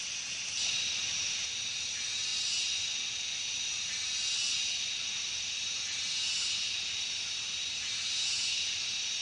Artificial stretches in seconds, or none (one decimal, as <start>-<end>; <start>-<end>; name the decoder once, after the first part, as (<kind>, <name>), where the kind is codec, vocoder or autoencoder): none